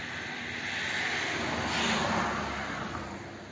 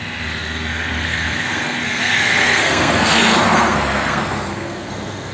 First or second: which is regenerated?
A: second